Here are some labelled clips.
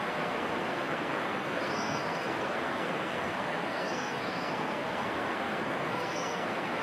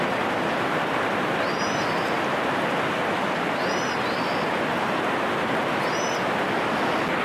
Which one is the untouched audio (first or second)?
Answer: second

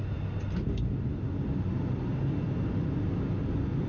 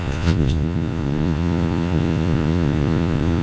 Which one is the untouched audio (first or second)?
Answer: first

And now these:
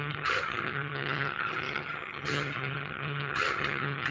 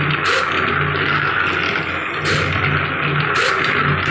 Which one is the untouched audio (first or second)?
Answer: second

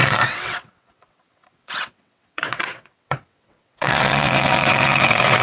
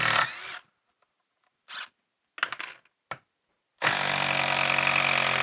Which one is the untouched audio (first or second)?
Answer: second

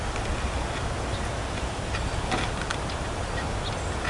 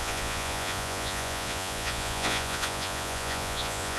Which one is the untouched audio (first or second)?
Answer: first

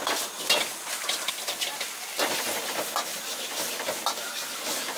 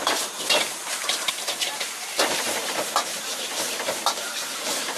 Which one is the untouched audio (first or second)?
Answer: first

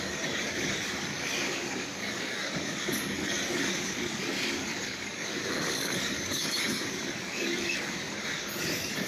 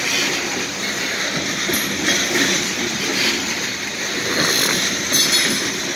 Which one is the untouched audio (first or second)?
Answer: second